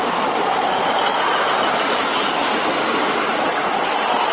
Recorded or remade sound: recorded